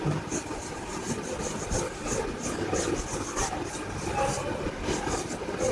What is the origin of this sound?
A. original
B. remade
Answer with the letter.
A